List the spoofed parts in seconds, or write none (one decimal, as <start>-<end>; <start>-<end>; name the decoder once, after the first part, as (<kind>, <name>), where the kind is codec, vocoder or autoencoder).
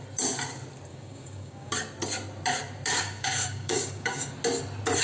0.9-1.7 (codec, DAC); 2.9-4.3